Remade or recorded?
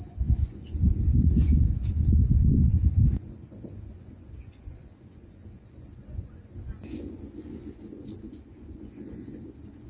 remade